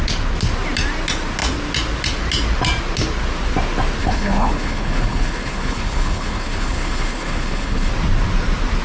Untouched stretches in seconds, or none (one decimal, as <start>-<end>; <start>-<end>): 0.0-4.0; 7.9-8.8